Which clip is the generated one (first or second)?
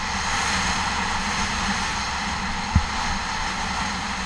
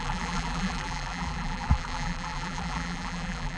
second